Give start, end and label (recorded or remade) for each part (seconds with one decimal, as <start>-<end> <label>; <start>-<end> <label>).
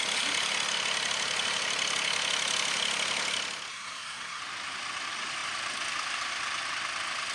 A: 0.0-3.7 recorded; 3.7-4.4 remade; 4.4-7.3 recorded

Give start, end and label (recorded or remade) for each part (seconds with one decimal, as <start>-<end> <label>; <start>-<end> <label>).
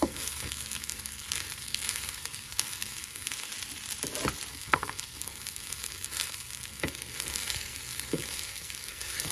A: 0.0-3.5 remade; 3.5-4.5 recorded; 4.5-9.3 remade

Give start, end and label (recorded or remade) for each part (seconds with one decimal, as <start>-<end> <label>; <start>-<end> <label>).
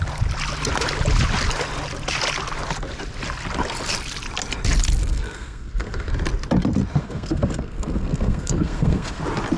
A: 0.0-5.0 recorded; 5.0-6.1 remade; 6.1-7.0 recorded; 7.0-9.2 remade; 9.2-9.6 recorded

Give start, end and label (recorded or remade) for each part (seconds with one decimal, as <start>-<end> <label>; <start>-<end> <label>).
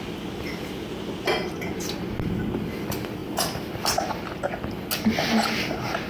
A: 0.0-6.1 recorded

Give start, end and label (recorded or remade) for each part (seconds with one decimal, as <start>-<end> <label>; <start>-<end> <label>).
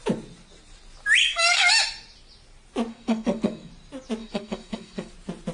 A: 0.0-1.2 recorded; 1.2-1.7 remade; 1.7-2.9 recorded; 2.9-3.7 remade; 3.7-4.2 recorded; 4.2-5.1 remade; 5.1-5.5 recorded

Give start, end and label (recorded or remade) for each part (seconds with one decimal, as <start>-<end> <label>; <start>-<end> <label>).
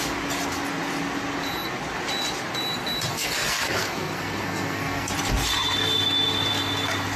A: 0.0-3.1 recorded; 3.1-5.1 remade; 5.1-7.2 recorded